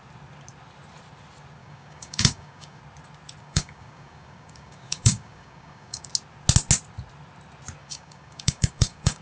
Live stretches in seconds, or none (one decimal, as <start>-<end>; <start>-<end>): 0.0-1.6; 2.8-3.4; 6.1-7.8